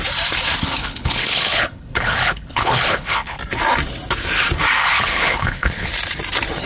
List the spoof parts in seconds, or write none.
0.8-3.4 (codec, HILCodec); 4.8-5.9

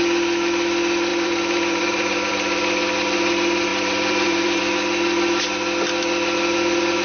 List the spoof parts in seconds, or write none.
1.1-2.3 (vocoder, BigVGAN v2); 3.7-4.6

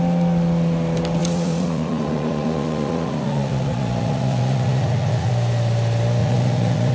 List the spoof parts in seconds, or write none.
1.2-5.3 (vocoder, Vocos); 6.2-6.9

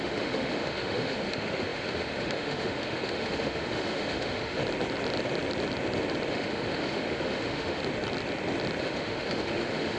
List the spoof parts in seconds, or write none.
0.0-4.6 (autoencoder, DAC-VAE); 6.3-7.8; 8.8-10.0

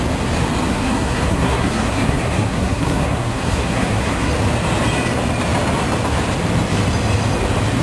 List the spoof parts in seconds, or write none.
0.7-4.3 (codec, SNAC)